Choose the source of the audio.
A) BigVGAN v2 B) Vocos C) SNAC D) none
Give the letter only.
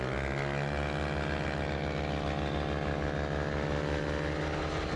D